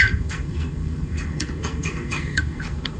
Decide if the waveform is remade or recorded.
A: remade